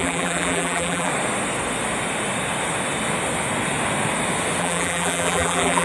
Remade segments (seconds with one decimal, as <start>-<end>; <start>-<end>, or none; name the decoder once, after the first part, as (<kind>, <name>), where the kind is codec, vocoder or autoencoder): 0.0-1.1 (vocoder, BigVGAN v2); 4.6-5.8